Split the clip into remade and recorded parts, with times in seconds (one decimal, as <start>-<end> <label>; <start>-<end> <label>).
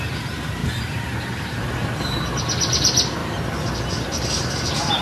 0.0-5.0 recorded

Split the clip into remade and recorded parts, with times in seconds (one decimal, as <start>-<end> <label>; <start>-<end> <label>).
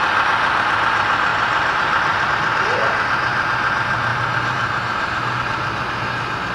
0.0-1.3 recorded; 1.3-2.3 remade; 2.3-4.1 recorded; 4.1-5.4 remade; 5.4-6.5 recorded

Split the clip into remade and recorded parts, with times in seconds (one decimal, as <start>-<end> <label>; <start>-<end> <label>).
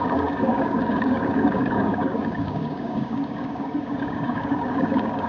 0.0-5.3 remade